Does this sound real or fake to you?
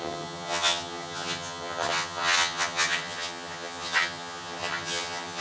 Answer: fake